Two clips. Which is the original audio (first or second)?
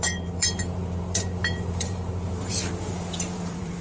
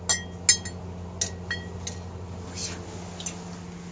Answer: second